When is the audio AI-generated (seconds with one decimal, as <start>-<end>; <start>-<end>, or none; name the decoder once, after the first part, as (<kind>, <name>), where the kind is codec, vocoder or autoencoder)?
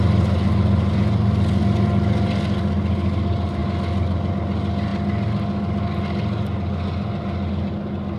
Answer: none